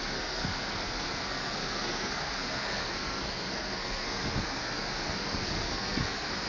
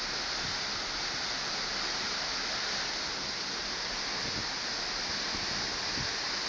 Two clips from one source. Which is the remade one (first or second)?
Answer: first